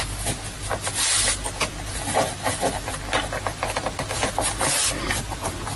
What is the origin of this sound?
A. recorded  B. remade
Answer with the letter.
A